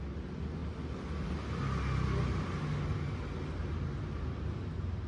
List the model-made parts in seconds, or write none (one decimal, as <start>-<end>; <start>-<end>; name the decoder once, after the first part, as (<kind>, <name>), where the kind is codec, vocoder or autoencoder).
none